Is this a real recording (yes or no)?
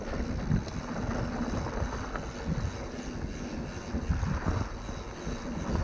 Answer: yes